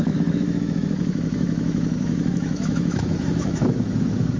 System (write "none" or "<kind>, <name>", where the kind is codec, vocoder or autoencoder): autoencoder, DAC-VAE